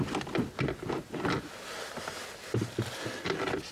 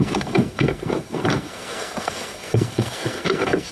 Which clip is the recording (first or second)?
first